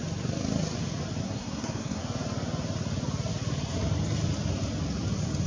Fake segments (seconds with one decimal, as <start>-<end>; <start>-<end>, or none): 1.2-2.0